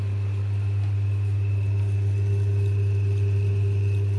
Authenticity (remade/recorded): recorded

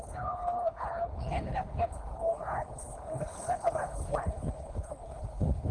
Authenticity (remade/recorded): remade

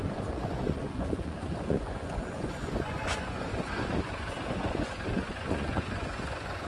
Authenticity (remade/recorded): remade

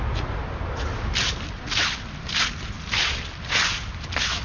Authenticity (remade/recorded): recorded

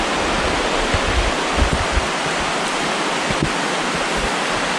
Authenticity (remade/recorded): recorded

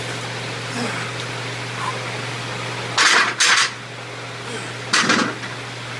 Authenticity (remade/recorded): recorded